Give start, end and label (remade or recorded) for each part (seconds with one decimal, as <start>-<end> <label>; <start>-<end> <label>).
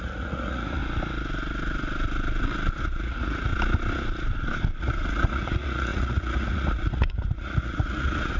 0.0-0.8 remade; 0.8-2.8 recorded; 2.8-3.5 remade; 3.5-4.8 recorded; 4.8-8.4 remade